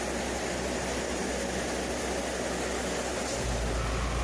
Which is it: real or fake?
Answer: real